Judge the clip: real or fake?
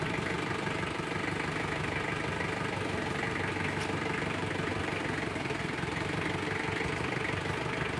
real